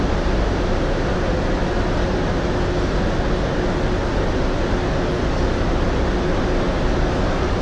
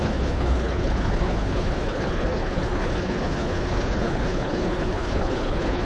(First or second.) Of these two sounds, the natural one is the first